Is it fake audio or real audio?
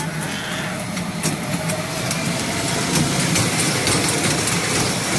real